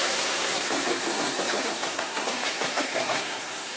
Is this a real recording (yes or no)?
no